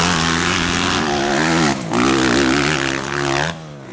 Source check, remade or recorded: recorded